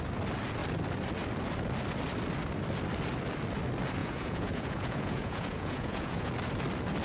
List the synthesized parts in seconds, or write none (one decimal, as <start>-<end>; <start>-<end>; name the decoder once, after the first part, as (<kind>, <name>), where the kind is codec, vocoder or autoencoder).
4.0-6.3 (vocoder, Vocos)